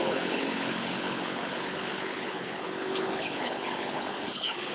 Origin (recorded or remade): remade